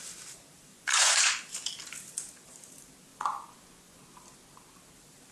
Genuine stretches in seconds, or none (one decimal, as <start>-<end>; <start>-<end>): 0.0-0.7; 1.3-3.1; 4.0-5.3